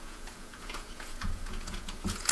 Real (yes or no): no